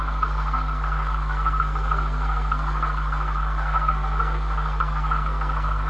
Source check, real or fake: fake